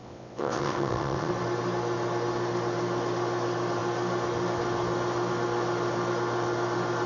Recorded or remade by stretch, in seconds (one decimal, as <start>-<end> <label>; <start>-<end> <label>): 0.0-1.3 remade; 1.3-7.1 recorded